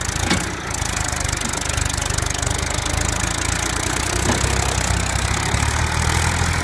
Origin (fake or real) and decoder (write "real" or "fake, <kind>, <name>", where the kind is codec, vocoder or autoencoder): real